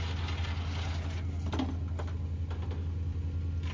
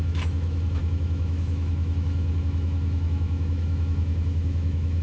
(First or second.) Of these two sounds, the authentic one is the first